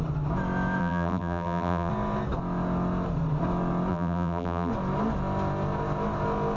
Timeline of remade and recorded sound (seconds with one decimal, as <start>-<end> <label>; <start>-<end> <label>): 0.0-0.8 recorded; 0.8-1.9 remade; 1.9-3.9 recorded; 3.9-4.7 remade; 4.7-6.6 recorded